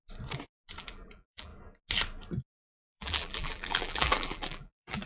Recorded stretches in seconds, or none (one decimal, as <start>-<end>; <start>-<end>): 0.0-0.8; 1.5-2.7